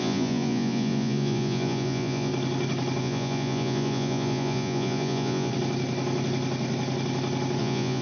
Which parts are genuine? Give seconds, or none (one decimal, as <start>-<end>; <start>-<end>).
2.3-3.0; 5.5-7.6